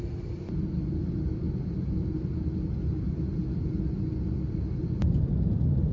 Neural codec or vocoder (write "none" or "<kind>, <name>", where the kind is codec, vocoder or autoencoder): none